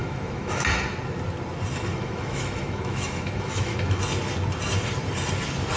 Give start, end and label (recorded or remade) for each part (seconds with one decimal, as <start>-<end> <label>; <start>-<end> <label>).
0.0-0.6 remade; 0.6-1.9 recorded; 1.9-4.0 remade; 4.0-5.8 recorded